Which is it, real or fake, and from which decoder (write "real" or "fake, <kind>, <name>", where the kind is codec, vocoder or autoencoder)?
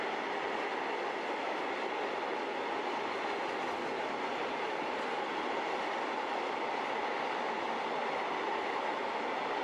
real